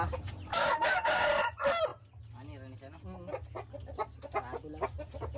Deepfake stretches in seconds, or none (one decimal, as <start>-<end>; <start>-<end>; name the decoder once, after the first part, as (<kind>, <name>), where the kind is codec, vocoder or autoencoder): 0.5-1.4 (codec, DAC)